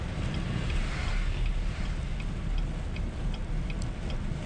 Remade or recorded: recorded